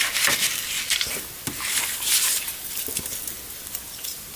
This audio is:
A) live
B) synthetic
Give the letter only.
A